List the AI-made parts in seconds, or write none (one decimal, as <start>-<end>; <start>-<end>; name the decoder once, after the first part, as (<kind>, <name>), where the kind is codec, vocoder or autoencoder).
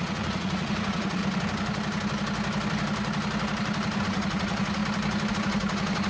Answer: 0.0-1.2 (vocoder, Vocos); 4.0-4.8; 5.3-6.1